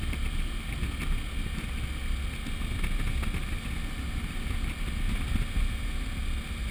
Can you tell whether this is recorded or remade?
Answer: recorded